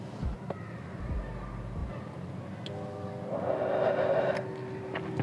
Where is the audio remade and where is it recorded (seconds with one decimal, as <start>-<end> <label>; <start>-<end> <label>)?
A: 0.0-5.2 recorded